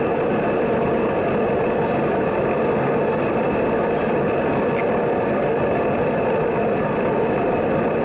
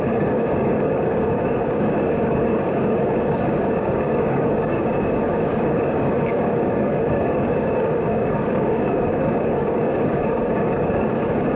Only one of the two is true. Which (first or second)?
first